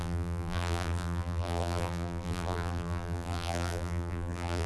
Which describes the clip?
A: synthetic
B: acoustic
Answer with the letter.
A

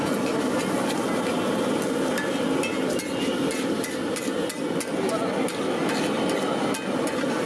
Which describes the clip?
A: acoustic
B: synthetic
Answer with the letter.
A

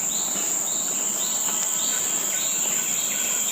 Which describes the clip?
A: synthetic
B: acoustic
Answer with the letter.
B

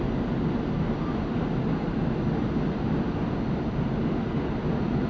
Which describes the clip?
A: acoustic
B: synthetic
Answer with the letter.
A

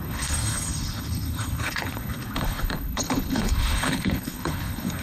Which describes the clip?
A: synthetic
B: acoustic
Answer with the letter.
A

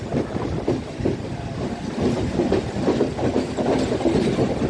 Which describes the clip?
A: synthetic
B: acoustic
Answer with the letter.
B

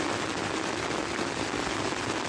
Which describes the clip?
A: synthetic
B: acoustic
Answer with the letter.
B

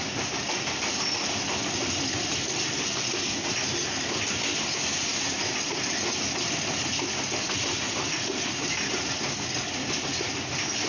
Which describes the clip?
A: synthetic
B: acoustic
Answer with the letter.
B